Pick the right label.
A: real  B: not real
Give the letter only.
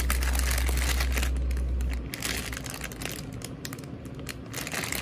A